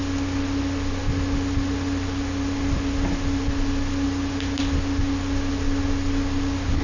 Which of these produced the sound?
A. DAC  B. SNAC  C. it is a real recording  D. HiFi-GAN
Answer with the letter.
C